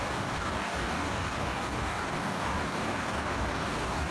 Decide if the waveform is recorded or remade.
remade